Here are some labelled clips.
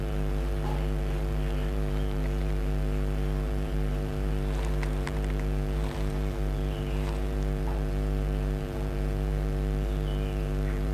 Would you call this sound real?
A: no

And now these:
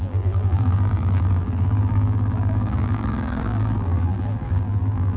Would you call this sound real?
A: no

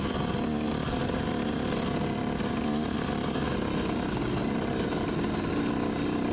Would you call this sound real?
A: yes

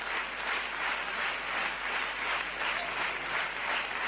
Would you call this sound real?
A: yes